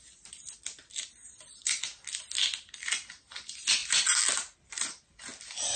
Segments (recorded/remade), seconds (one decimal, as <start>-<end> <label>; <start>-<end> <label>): 0.0-5.8 recorded